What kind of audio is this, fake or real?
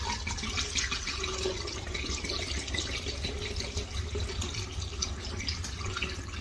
real